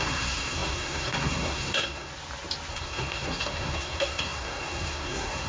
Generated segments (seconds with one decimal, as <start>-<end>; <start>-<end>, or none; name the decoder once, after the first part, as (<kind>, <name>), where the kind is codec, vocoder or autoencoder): 0.0-2.1 (codec, SNAC); 2.7-5.5